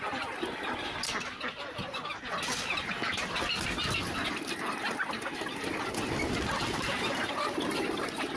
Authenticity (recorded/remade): recorded